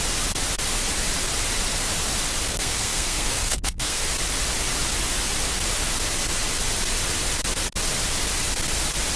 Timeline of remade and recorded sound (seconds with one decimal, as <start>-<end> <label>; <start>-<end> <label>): 0.0-2.5 recorded; 2.5-4.0 remade; 4.0-9.2 recorded